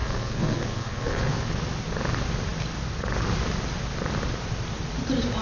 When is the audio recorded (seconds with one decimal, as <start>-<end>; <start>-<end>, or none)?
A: 1.5-5.4